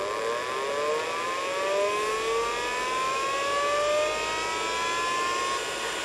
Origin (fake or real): real